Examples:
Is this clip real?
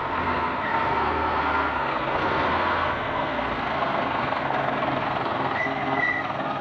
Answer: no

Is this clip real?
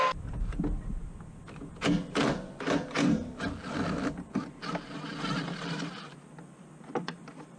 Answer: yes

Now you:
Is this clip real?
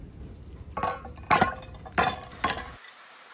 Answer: yes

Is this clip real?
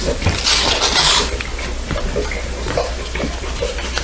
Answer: yes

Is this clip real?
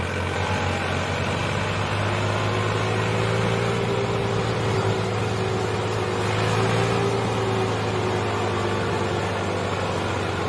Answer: yes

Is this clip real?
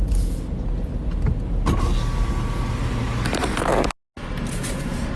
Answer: yes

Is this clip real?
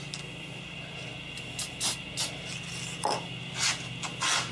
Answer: yes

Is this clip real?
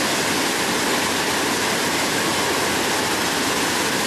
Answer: yes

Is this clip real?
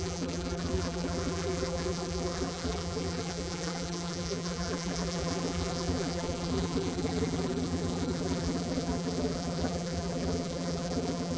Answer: no